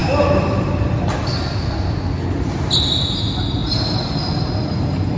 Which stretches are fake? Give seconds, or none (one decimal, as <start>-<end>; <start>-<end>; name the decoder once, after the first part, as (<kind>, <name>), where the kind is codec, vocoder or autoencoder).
3.6-5.2 (vocoder, BigVGAN v2)